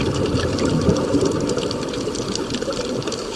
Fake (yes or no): no